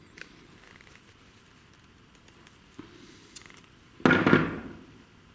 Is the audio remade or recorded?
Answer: recorded